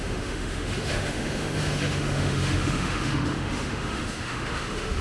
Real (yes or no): no